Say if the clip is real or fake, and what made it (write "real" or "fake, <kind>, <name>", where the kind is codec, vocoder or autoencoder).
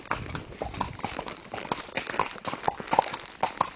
real